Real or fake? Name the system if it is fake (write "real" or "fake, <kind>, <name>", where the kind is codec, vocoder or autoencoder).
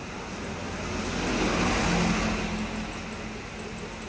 real